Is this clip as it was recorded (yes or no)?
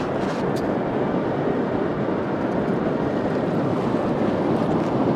yes